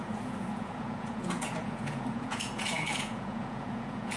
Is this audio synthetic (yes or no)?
yes